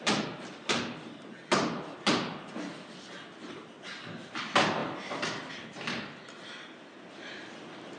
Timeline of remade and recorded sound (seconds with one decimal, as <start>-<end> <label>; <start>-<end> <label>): 0.0-8.0 recorded